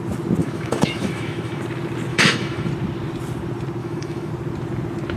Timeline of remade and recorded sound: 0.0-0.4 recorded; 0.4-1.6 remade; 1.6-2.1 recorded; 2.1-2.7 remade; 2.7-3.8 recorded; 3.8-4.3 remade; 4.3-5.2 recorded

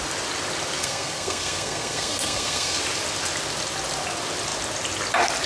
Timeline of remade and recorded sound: 0.0-0.8 recorded; 0.8-2.8 remade; 2.8-5.5 recorded

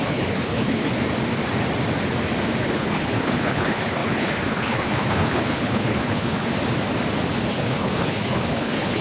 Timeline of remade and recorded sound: 0.0-0.9 remade; 0.9-2.6 recorded; 2.6-6.5 remade; 6.5-7.5 recorded; 7.5-9.0 remade